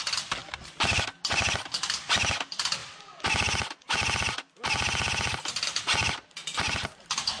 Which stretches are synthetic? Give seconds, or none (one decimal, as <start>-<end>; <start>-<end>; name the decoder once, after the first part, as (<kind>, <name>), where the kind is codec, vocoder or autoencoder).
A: 0.4-1.0 (vocoder, BigVGAN v2)

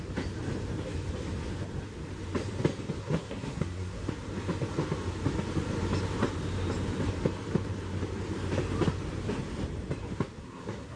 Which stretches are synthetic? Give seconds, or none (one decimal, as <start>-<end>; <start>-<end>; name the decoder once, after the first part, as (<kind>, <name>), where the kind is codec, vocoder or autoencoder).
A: 3.0-4.1 (codec, SNAC); 10.4-11.0

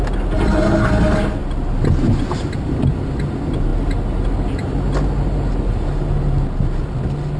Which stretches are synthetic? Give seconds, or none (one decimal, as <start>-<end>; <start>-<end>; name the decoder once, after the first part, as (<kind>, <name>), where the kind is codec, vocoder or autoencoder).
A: none

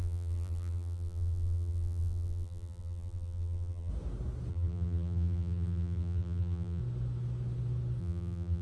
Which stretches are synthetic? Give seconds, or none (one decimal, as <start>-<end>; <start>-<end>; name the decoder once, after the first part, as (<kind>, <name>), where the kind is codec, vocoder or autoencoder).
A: 0.0-3.9 (vocoder, BigVGAN v2); 4.5-6.8; 8.0-8.6

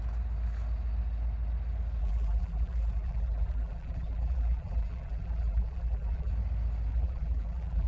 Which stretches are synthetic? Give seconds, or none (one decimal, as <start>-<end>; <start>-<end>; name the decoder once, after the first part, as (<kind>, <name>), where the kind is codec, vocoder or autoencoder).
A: 2.0-6.3 (vocoder, BigVGAN v2); 6.9-7.9